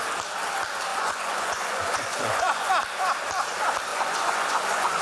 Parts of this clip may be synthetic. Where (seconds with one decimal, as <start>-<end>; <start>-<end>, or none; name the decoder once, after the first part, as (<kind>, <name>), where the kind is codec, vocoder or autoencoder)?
0.9-2.7 (vocoder, Vocos); 3.9-5.0